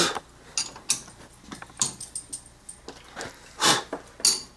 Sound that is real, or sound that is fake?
real